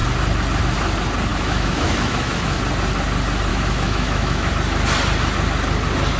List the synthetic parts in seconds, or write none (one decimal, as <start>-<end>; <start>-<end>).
1.3-2.6; 3.5-4.5